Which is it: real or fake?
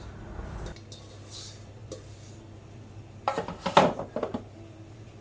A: real